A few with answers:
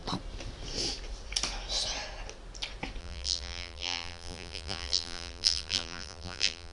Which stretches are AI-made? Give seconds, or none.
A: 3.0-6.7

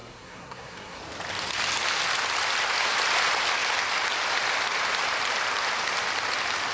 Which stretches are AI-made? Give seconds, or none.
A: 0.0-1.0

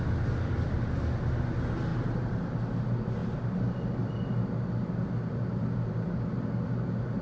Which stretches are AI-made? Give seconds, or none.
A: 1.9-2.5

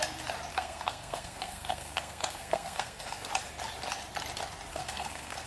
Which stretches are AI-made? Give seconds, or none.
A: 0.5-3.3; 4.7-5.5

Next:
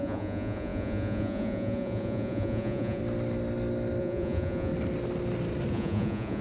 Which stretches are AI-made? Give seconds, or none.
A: 0.0-3.0; 4.0-4.7; 5.7-6.4

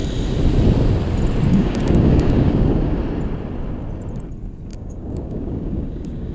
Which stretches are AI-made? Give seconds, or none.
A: 1.5-3.0; 4.7-6.3